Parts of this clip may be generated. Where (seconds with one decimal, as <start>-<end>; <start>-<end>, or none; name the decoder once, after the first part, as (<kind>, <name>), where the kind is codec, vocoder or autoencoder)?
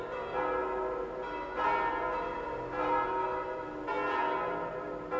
none